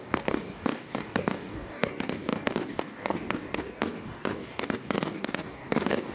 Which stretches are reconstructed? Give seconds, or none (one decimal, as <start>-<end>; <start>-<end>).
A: 0.0-6.1